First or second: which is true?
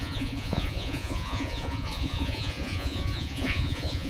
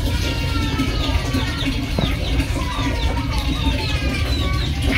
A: second